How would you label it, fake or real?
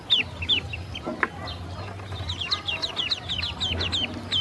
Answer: real